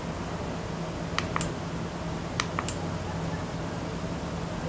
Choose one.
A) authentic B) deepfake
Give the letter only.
A